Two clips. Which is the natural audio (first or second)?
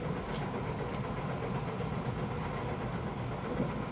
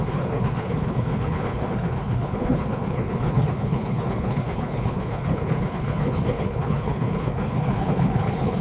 first